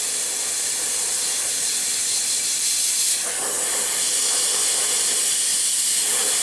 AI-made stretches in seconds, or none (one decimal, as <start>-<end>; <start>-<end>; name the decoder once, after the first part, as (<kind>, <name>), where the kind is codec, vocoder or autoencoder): none